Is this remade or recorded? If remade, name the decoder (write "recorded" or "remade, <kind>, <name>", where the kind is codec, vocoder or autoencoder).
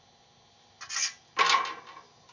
recorded